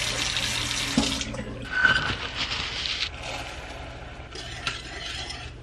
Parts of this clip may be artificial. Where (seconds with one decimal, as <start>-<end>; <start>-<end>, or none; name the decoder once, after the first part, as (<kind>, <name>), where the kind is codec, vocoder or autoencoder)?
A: none